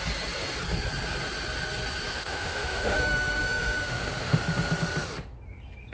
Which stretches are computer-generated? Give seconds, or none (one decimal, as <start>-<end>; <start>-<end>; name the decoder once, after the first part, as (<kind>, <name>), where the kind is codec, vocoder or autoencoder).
2.1-4.4 (autoencoder, DAC-VAE)